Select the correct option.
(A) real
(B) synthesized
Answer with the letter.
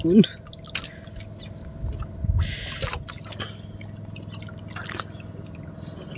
A